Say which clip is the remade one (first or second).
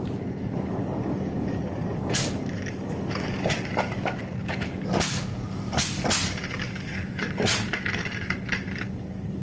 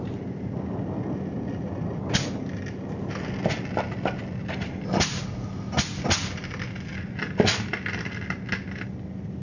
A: first